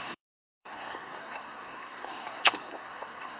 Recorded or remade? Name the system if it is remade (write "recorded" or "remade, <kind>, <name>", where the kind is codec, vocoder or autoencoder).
remade, codec, SNAC